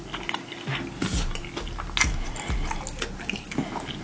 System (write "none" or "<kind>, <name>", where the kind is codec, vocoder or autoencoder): none